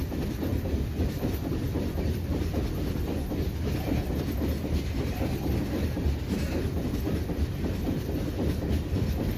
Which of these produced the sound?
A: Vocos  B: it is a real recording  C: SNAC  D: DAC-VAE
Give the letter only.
B